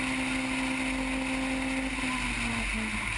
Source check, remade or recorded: recorded